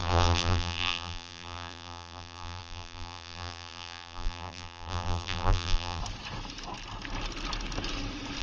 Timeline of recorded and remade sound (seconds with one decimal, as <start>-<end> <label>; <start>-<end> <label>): 0.0-6.0 remade; 6.0-8.4 recorded

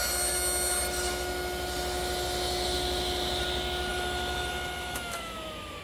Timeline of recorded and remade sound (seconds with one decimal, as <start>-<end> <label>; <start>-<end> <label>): 0.0-3.9 recorded; 3.9-5.8 remade